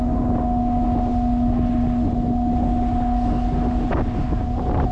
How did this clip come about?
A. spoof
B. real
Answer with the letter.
B